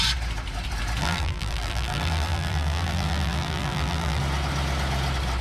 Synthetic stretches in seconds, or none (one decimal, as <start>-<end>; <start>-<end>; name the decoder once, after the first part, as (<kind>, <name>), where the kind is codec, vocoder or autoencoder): 1.0-4.2 (vocoder, BigVGAN v2)